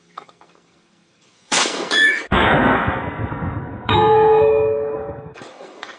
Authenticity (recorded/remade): remade